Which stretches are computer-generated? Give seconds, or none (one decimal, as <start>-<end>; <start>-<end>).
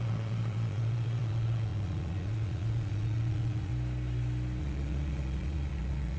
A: 0.0-3.7; 4.6-6.2